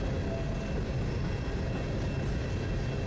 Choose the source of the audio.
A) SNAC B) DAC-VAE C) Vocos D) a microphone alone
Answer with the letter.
D